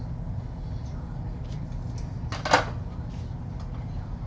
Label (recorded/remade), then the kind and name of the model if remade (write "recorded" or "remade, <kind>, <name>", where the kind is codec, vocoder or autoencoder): recorded